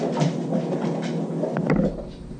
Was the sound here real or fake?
real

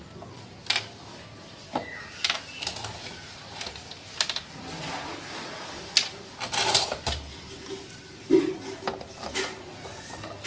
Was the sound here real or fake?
real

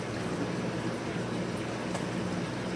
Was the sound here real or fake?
real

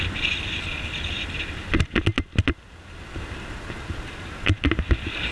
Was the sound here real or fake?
real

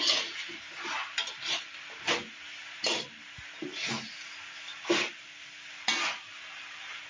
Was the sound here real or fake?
real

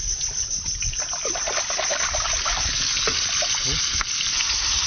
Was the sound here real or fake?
real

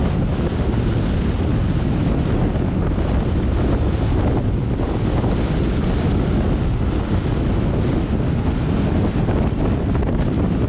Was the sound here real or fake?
real